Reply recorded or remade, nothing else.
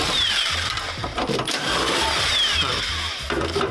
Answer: remade